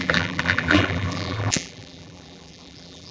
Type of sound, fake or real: fake